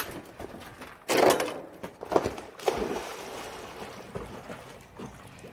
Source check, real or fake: real